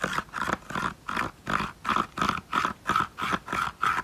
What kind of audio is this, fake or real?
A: real